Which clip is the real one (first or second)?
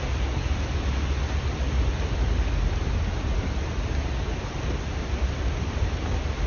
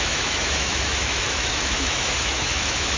first